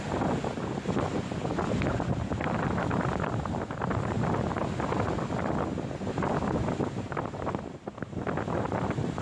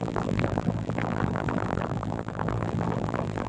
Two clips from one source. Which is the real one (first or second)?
first